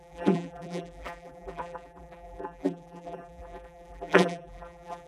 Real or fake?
fake